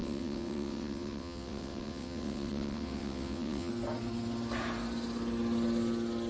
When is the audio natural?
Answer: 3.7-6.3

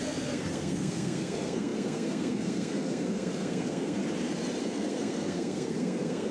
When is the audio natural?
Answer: 4.0-4.6

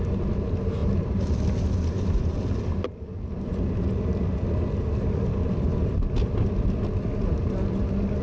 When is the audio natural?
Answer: 0.0-0.8; 4.3-8.2

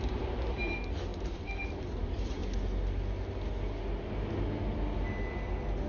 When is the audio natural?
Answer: 2.4-5.9